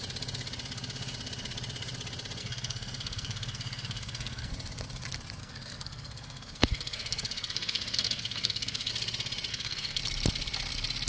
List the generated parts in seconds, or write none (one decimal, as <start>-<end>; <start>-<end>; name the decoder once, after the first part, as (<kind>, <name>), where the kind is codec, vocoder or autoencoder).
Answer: 2.4-4.5 (codec, SNAC); 5.4-8.9; 9.5-10.0